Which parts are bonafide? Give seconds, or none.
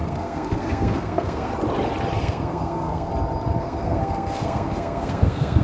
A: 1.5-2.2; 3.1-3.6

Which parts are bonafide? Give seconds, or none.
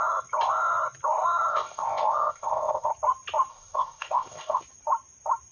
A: 0.0-1.5; 2.9-3.5; 4.6-5.5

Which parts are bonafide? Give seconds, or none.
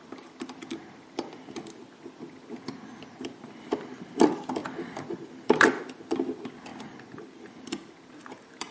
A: none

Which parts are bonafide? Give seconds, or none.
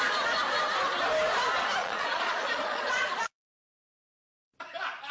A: 0.0-1.8; 3.9-5.1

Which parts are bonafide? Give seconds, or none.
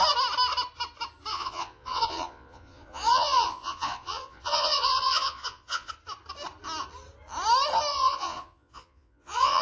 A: 0.0-1.3; 5.9-7.9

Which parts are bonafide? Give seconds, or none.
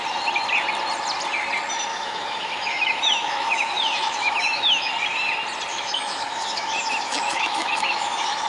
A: 0.0-1.9; 4.9-5.7